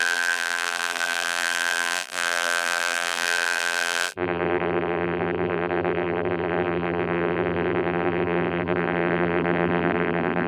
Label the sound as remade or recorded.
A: remade